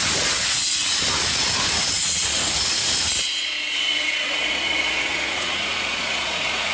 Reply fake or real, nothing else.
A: fake